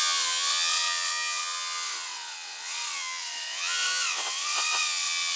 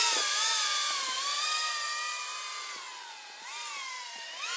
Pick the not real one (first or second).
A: first